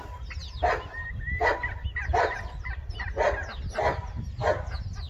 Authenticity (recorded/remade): recorded